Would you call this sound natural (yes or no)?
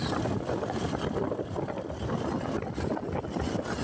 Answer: yes